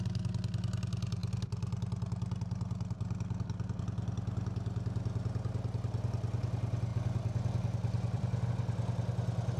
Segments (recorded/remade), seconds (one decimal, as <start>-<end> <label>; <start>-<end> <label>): 0.0-6.9 recorded; 6.9-8.5 remade; 8.5-9.6 recorded

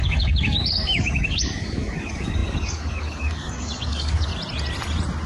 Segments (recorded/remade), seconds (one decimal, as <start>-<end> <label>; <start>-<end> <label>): 0.0-4.3 remade; 4.3-5.3 recorded

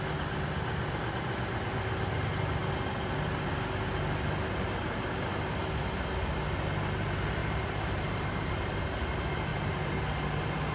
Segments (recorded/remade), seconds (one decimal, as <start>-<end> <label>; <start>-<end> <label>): 0.0-7.4 recorded; 7.4-8.8 remade; 8.8-9.5 recorded; 9.5-10.0 remade; 10.0-10.7 recorded

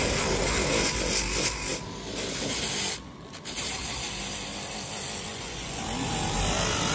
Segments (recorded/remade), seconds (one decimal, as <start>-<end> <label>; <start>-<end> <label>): 0.0-5.3 recorded; 5.3-5.8 remade; 5.8-6.9 recorded

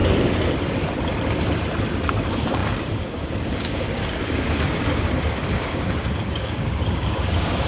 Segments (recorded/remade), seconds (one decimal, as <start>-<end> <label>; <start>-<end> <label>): 0.0-2.1 recorded; 2.1-7.7 remade